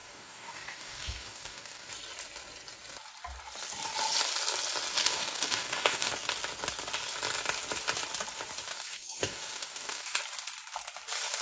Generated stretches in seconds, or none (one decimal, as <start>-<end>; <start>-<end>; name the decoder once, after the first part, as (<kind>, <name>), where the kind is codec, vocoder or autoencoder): 0.0-1.9 (codec, DAC); 5.0-6.1; 8.7-10.2